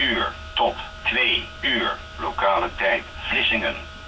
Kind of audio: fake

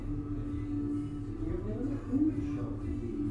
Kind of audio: real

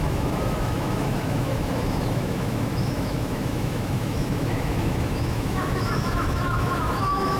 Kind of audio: fake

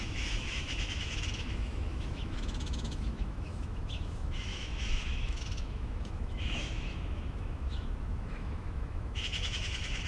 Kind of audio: fake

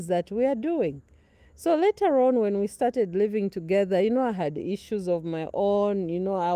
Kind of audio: fake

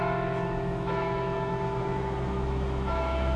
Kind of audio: fake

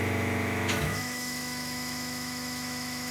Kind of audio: fake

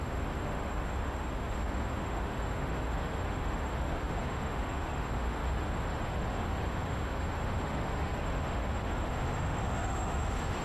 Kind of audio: fake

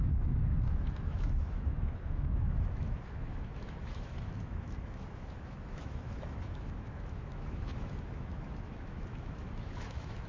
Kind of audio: fake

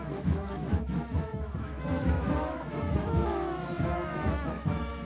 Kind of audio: fake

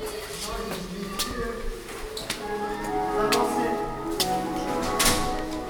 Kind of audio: real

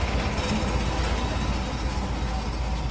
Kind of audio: real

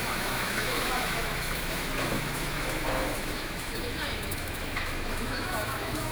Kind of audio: fake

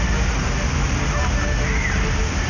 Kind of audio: real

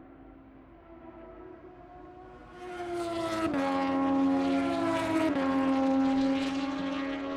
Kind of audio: real